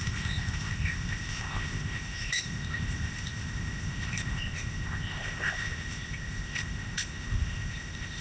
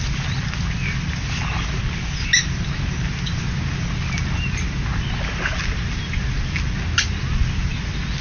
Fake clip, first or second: first